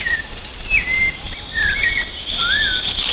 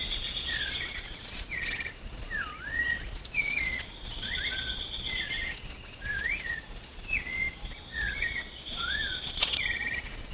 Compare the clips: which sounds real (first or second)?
first